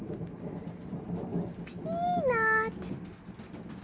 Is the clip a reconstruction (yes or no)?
no